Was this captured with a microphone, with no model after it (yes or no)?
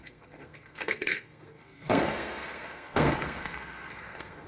no